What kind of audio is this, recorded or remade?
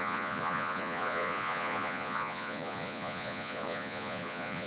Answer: remade